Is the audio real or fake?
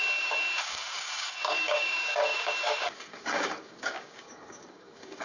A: fake